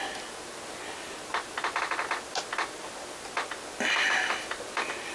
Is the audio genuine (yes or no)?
yes